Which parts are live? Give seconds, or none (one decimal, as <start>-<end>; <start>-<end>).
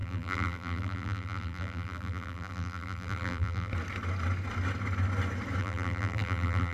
3.7-5.6